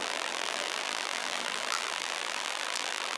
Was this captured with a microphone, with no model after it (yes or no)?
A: no